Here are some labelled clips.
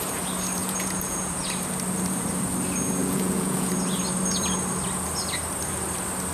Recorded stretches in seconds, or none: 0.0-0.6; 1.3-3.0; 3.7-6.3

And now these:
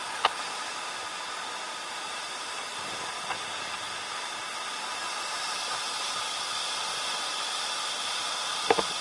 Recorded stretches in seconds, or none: 0.0-6.9; 7.5-9.0

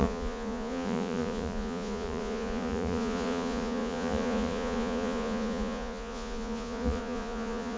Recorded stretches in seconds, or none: none